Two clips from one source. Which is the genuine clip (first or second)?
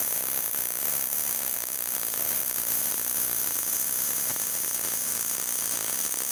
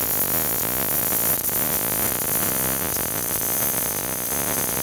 second